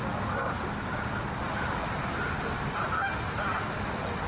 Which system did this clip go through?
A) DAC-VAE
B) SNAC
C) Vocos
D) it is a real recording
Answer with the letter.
D